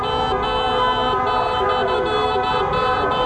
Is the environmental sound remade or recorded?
recorded